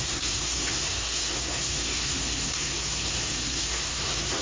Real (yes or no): no